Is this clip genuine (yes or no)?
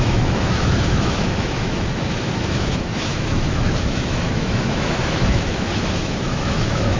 no